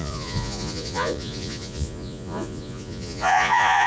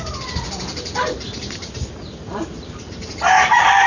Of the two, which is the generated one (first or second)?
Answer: first